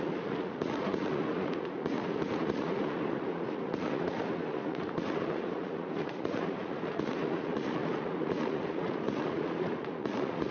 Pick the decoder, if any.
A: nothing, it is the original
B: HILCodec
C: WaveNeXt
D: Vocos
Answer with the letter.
D